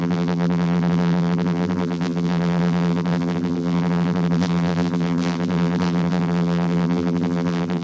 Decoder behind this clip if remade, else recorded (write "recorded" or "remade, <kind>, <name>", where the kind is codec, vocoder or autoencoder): remade, vocoder, BigVGAN v2